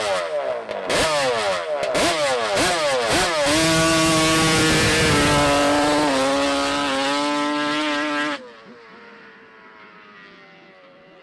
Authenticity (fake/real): real